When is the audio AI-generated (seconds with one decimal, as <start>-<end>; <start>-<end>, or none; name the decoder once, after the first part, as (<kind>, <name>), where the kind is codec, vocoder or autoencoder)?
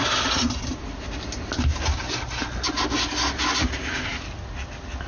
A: none